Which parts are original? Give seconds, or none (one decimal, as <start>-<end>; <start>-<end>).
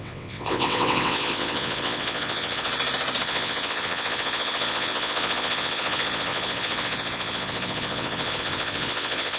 2.7-3.2